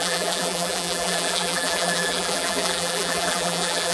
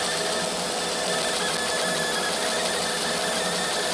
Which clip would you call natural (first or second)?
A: second